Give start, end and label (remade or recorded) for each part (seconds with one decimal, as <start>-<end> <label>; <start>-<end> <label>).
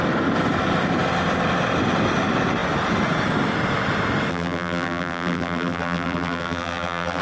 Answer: 0.0-4.3 recorded; 4.3-7.2 remade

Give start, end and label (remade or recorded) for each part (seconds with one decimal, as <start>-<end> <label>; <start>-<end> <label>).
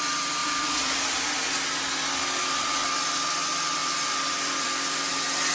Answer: 0.0-0.4 recorded; 0.4-1.4 remade; 1.4-3.8 recorded; 3.8-5.1 remade; 5.1-5.5 recorded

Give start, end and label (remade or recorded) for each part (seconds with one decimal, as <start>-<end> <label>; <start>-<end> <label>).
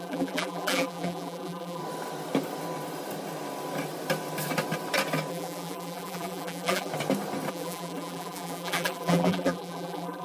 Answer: 0.0-1.8 remade; 1.8-5.3 recorded; 5.3-6.9 remade; 6.9-7.5 recorded; 7.5-10.2 remade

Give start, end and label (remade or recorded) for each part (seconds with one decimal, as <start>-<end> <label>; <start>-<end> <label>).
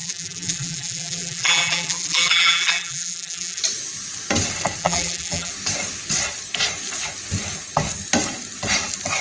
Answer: 0.0-3.6 remade; 3.6-4.8 recorded; 4.8-5.5 remade; 5.5-9.2 recorded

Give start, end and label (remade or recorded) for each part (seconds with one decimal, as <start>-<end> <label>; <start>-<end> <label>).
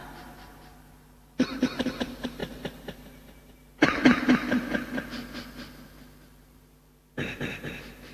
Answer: 0.0-4.2 remade; 4.2-6.4 recorded; 6.4-8.1 remade